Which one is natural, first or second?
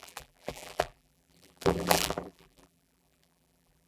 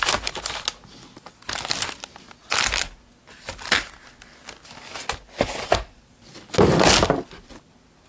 second